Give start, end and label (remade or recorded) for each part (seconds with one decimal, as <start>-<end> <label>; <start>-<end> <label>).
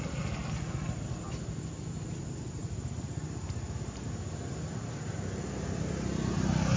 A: 0.0-6.8 recorded